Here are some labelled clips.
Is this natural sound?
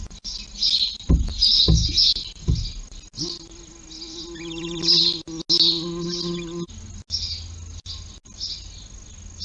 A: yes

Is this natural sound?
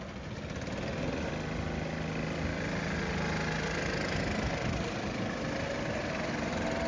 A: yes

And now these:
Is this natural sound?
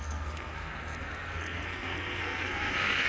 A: no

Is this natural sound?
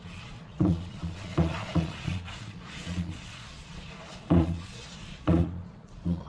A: no